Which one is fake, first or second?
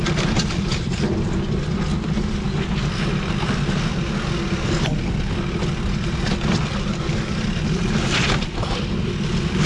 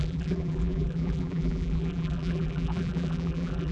second